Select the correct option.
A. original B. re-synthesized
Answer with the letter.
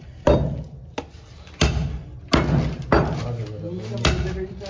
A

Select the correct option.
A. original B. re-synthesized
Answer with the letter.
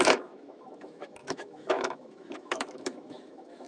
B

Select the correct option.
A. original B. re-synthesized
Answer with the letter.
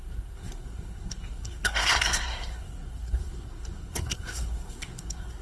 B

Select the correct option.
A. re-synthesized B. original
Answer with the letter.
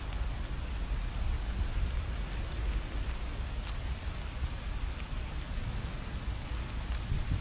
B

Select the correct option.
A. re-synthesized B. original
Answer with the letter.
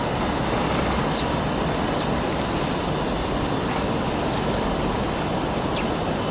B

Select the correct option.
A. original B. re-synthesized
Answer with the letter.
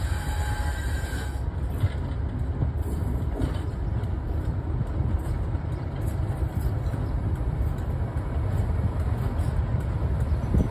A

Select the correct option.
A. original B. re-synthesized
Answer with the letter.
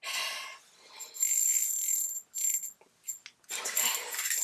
A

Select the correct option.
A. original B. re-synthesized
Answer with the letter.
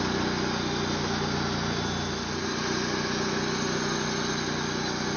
A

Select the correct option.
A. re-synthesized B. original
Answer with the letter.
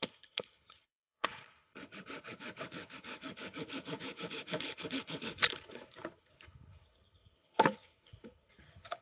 A